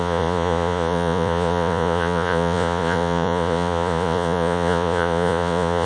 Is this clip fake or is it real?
fake